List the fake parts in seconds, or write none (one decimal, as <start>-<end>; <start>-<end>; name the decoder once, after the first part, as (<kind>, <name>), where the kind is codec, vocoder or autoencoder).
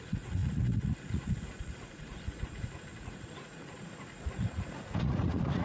0.0-5.6 (vocoder, Vocos)